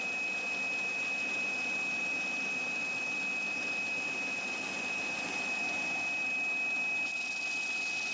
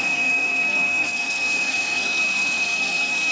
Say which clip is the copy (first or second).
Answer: second